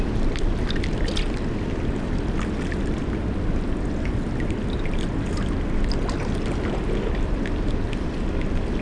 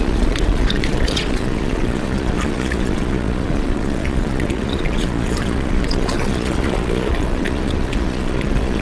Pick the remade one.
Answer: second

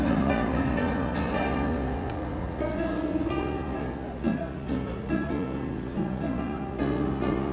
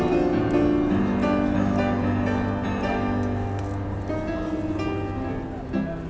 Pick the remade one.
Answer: first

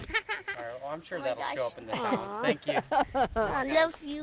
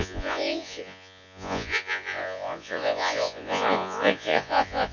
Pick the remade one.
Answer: second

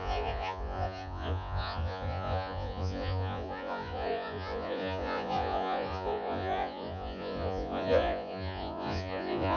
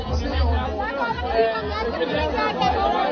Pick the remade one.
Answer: first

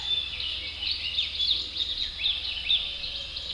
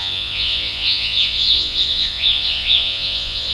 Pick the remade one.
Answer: second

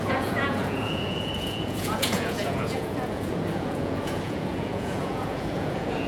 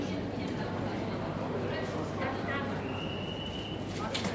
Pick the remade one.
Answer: first